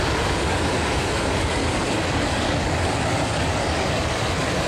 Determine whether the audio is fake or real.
fake